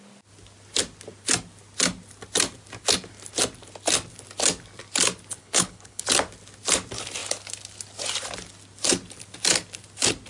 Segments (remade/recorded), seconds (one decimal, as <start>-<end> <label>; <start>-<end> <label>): 0.0-5.4 recorded; 5.4-6.0 remade; 6.0-10.3 recorded

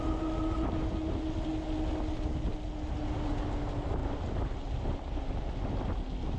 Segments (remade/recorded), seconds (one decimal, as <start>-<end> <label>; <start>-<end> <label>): 0.0-6.4 recorded